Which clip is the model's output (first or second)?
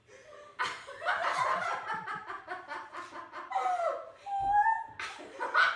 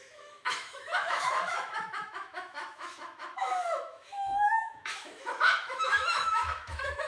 second